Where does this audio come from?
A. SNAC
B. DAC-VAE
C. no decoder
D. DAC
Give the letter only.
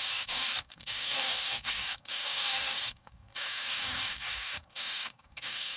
D